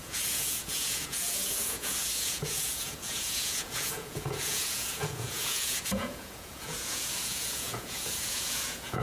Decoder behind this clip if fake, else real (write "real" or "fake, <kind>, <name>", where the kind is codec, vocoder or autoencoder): fake, vocoder, Vocos